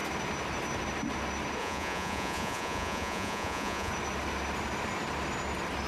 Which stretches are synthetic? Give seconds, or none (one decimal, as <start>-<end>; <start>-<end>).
1.6-3.9